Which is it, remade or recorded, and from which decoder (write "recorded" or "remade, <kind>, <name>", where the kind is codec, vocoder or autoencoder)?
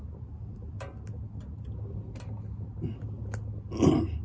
recorded